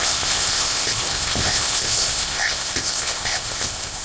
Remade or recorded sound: remade